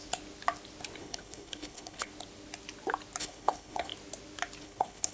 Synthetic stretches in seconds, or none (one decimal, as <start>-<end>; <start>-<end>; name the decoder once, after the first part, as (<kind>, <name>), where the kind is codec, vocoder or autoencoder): 1.0-2.1 (codec, HILCodec); 3.2-3.9; 4.6-5.1